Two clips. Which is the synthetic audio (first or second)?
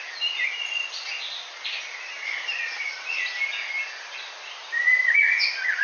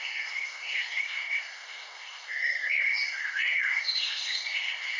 second